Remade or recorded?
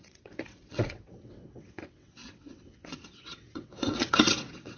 remade